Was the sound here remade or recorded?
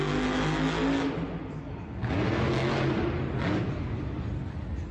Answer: recorded